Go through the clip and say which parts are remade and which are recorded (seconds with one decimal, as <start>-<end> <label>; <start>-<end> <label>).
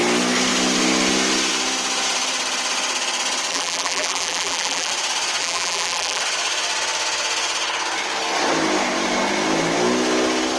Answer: 0.0-3.5 recorded; 3.5-4.9 remade; 4.9-5.4 recorded; 5.4-6.2 remade; 6.2-10.6 recorded